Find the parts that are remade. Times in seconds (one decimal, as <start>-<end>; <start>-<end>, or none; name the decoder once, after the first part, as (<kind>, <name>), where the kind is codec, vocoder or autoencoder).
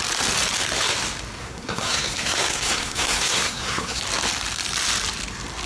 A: 1.4-4.0 (codec, SNAC)